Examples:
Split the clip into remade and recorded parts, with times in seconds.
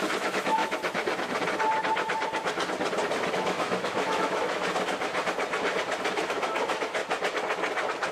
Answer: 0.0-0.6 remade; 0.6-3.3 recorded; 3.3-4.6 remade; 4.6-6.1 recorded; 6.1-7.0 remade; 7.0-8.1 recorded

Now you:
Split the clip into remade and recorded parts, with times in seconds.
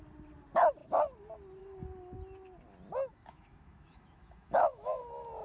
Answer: 0.0-3.1 recorded; 3.1-5.0 remade; 5.0-5.4 recorded